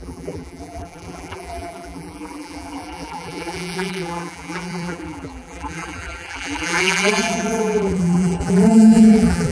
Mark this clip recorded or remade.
remade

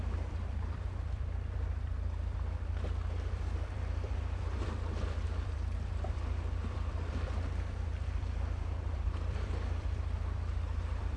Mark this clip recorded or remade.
remade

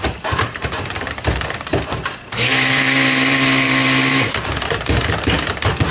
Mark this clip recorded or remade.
remade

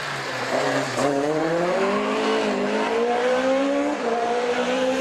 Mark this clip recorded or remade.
remade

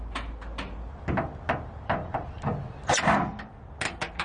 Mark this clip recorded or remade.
recorded